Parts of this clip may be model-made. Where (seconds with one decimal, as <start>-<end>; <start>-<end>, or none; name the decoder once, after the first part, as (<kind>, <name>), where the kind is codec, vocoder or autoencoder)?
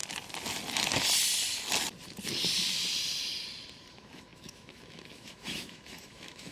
3.9-6.5 (autoencoder, DAC-VAE)